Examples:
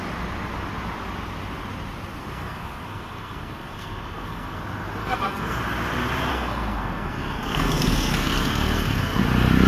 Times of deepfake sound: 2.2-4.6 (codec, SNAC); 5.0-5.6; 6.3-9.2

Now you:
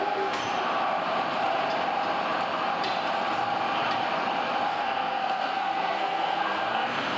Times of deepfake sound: 0.0-0.4 (codec, SNAC); 4.7-7.2

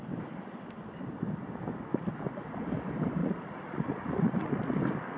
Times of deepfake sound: 3.2-4.5 (vocoder, Vocos)

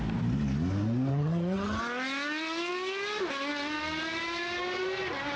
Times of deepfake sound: 1.1-1.8 (vocoder, HiFi-GAN)

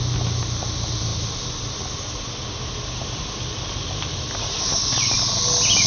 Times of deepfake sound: none

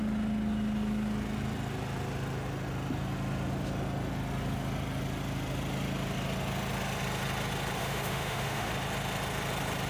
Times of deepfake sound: 7.8-8.7 (autoencoder, DAC-VAE)

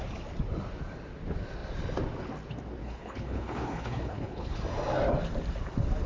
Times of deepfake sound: 2.8-4.6 (codec, HILCodec)

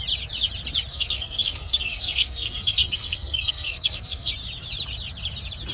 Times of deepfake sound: 0.9-4.3 (codec, SNAC)